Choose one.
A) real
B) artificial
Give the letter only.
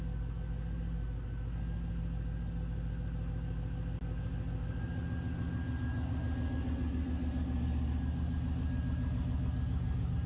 A